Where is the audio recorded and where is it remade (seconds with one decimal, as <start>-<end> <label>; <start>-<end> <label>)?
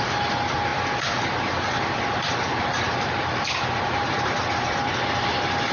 0.0-0.7 recorded; 0.7-4.1 remade; 4.1-5.7 recorded